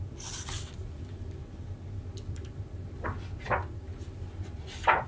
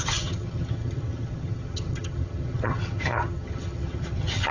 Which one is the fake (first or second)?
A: second